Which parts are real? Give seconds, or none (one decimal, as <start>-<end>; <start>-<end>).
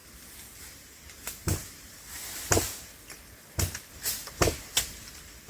0.0-5.5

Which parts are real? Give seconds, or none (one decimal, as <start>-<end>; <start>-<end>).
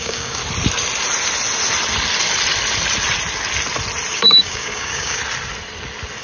0.4-4.1; 5.2-6.2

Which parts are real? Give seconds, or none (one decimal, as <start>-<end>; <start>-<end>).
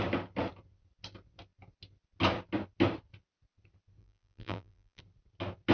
0.0-4.0; 5.0-5.7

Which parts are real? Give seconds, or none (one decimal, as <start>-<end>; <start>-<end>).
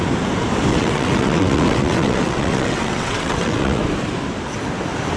0.0-0.7; 3.8-5.2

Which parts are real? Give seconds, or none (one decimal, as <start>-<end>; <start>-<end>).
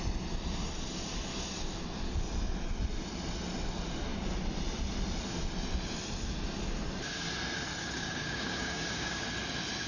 0.0-7.8; 9.3-9.9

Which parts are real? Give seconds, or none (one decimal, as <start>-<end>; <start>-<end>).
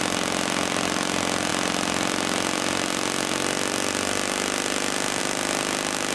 0.0-6.1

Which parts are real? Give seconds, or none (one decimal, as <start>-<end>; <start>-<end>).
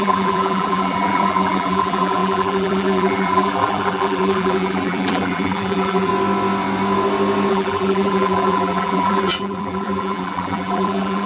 6.1-7.5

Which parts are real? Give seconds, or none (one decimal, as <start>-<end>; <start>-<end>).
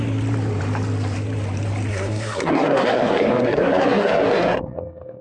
0.0-1.9